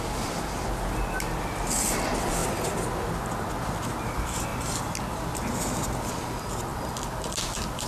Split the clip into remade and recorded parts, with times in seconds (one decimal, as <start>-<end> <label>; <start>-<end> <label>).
0.0-7.9 recorded